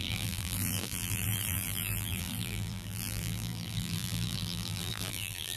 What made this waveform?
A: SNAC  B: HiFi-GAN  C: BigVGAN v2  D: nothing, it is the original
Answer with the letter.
C